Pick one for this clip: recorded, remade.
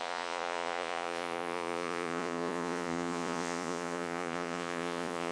remade